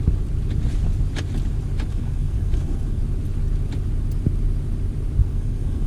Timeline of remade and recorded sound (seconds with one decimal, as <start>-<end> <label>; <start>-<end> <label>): 0.0-1.9 recorded; 1.9-3.0 remade; 3.0-5.2 recorded; 5.2-5.9 remade